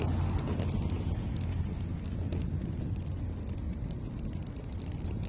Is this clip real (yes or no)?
yes